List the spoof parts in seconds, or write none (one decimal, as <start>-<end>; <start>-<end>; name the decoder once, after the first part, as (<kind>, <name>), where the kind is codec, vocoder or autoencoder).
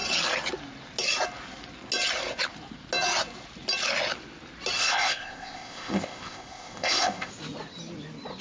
4.8-7.3 (codec, ZipCodec)